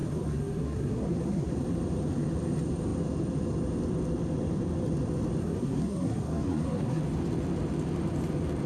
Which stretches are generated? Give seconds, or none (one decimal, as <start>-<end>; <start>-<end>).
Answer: 0.0-1.5; 5.4-7.0